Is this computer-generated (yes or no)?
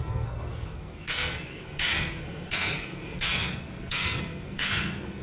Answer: yes